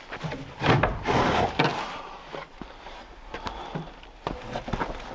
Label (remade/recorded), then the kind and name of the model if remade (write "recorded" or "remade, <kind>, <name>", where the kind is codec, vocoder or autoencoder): recorded